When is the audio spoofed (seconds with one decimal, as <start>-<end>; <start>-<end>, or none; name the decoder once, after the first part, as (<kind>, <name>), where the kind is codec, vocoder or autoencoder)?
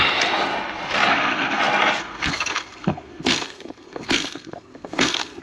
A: 1.1-1.6 (codec, SNAC); 2.0-5.4